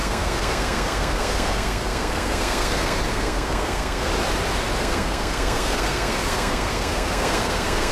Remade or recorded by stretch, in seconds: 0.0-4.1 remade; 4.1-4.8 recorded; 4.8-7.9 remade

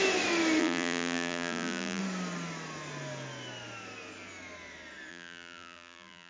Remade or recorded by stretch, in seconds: 0.0-0.6 recorded; 0.6-2.0 remade; 2.0-5.1 recorded; 5.1-6.3 remade

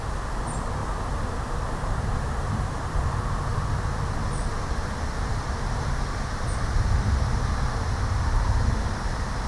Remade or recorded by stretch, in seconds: 0.0-0.8 recorded; 0.8-3.2 remade; 3.2-9.5 recorded

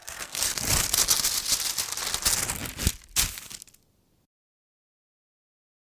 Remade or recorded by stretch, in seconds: 0.0-0.6 remade; 0.6-5.9 recorded

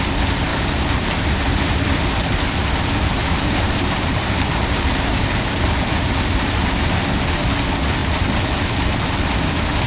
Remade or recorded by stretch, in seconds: 0.0-0.5 recorded; 0.5-1.1 remade; 1.1-3.2 recorded; 3.2-6.1 remade; 6.1-9.9 recorded

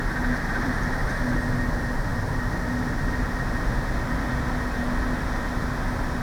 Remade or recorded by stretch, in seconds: 0.0-6.2 recorded

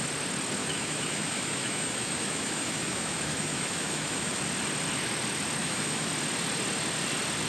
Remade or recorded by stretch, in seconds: 0.0-0.6 recorded; 0.6-4.4 remade; 4.4-5.6 recorded; 5.6-6.1 remade; 6.1-7.5 recorded